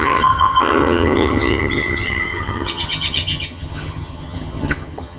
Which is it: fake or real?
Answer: fake